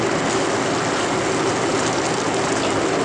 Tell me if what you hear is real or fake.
real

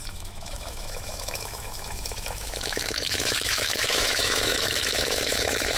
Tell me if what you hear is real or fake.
fake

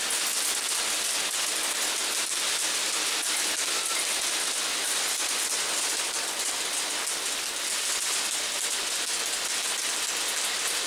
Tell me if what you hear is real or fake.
real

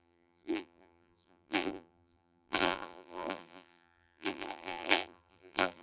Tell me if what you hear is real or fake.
fake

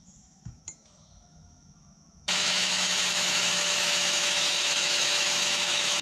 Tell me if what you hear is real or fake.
fake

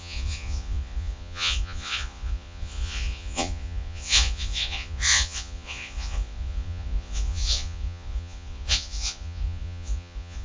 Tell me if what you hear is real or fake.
fake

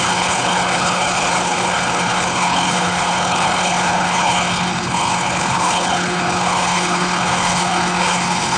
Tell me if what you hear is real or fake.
fake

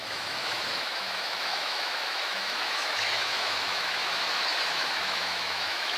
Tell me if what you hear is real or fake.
fake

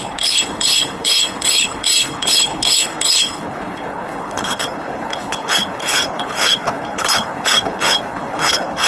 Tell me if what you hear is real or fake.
fake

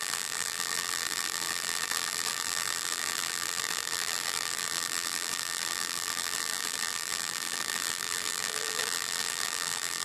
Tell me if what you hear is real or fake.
fake